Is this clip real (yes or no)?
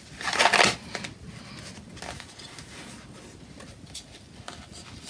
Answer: yes